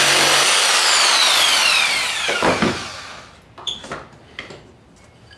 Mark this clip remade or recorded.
recorded